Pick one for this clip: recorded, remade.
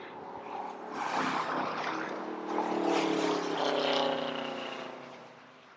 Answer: recorded